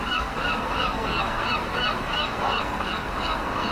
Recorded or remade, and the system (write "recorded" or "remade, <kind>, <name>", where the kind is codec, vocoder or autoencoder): remade, codec, SNAC